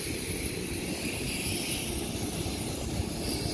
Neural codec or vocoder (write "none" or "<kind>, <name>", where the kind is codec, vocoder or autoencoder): none